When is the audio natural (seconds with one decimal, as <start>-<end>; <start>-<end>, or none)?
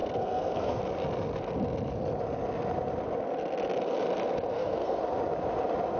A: 0.8-4.5; 5.0-6.0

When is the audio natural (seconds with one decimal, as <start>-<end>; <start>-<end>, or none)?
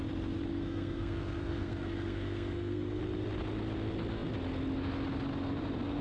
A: 0.0-0.5; 3.0-6.0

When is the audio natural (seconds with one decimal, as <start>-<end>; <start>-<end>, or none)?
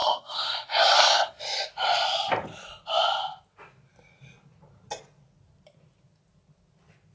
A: 1.4-7.1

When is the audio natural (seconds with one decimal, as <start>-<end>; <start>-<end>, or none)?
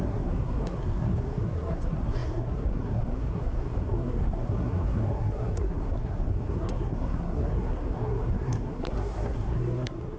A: none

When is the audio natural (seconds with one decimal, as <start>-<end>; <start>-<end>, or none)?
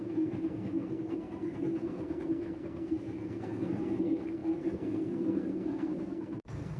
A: none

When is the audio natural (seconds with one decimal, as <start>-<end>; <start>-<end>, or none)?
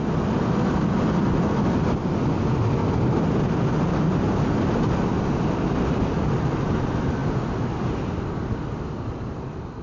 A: 0.0-9.8